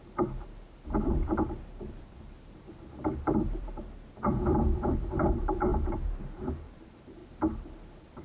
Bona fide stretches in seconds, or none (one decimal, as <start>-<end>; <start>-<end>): 7.2-8.2